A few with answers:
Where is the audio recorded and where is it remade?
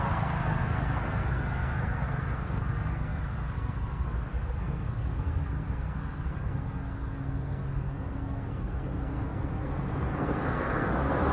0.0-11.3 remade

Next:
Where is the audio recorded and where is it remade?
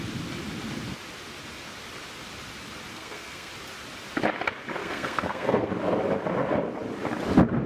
0.0-2.9 recorded; 2.9-3.5 remade; 3.5-4.8 recorded; 4.8-5.7 remade; 5.7-7.7 recorded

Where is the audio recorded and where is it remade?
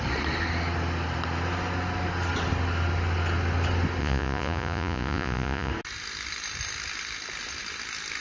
0.0-4.0 recorded; 4.0-5.7 remade; 5.7-8.2 recorded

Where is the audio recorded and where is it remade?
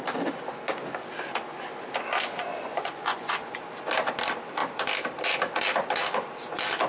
0.0-2.5 recorded; 2.5-3.6 remade; 3.6-6.9 recorded